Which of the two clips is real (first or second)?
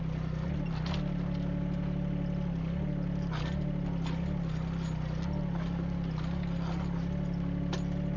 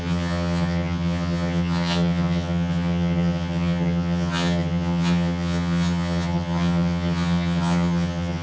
first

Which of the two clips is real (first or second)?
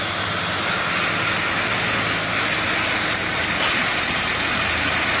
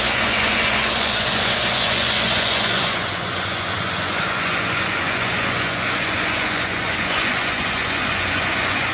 first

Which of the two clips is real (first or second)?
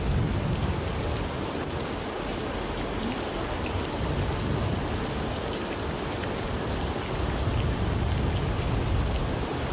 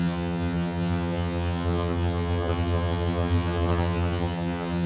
first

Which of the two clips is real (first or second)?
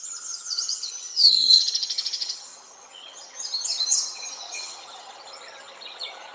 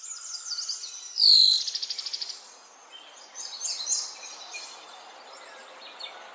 second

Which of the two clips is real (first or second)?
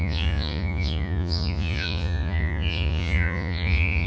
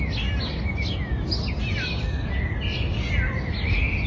second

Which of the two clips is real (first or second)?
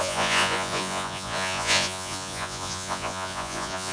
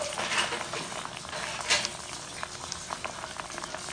second